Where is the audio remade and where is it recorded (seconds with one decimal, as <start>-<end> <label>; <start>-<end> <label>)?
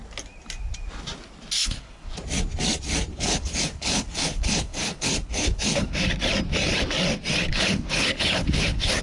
0.0-1.6 recorded; 1.6-2.1 remade; 2.1-3.1 recorded; 3.1-6.0 remade; 6.0-7.5 recorded; 7.5-9.0 remade